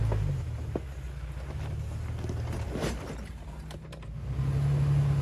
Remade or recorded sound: recorded